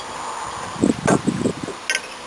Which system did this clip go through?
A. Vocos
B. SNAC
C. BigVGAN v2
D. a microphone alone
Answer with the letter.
D